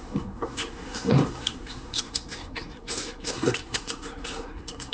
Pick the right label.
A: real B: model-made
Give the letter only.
B